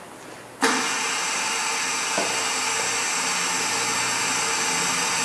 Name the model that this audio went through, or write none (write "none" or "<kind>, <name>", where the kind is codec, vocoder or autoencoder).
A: none